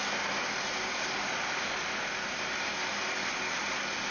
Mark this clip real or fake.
real